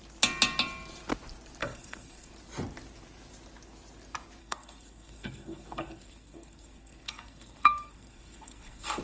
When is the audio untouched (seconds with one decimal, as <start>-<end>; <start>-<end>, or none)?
0.0-1.6; 2.3-4.4